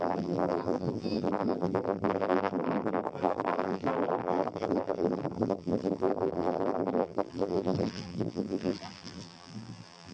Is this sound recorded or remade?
remade